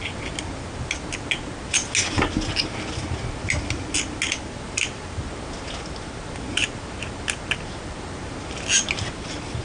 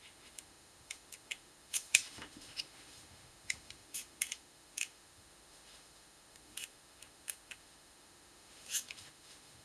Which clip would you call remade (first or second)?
second